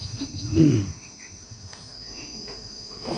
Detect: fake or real fake